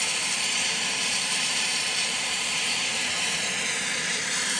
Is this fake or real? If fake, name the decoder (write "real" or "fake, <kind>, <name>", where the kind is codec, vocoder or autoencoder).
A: fake, vocoder, BigVGAN v2